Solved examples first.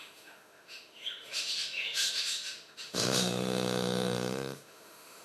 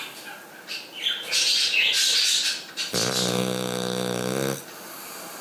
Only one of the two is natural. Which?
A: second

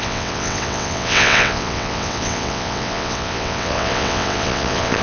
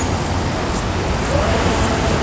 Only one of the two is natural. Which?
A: second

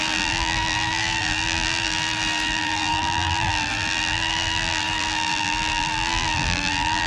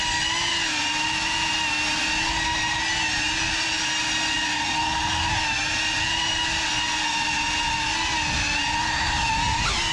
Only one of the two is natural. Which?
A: second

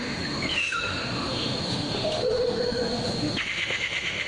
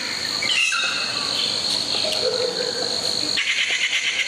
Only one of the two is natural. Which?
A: second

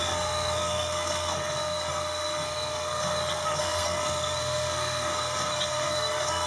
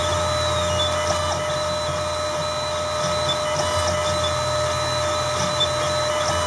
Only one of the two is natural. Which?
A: second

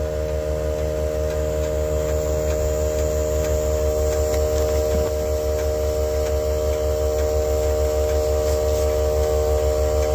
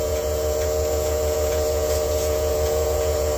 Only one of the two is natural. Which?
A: first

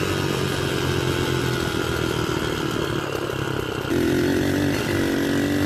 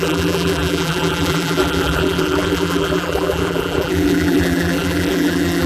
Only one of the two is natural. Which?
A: first